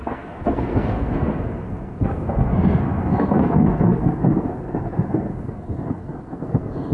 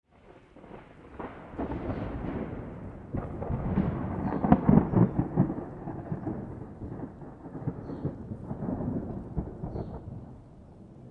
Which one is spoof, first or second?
first